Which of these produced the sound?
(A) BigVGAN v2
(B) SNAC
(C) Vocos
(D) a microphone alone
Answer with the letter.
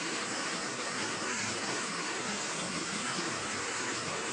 B